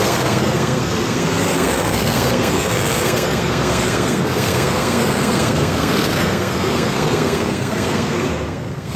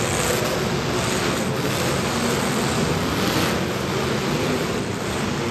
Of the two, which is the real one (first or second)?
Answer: second